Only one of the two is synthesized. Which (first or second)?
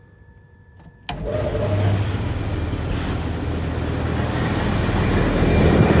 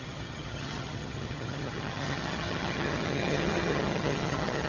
second